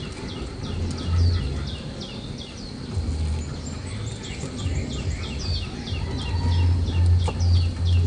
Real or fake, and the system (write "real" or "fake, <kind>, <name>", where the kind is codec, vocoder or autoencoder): real